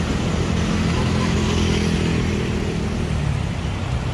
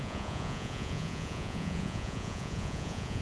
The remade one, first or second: second